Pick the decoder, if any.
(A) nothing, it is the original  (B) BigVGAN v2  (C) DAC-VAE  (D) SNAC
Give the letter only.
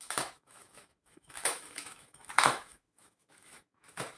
C